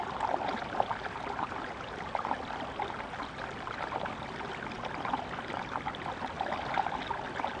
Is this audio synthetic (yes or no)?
no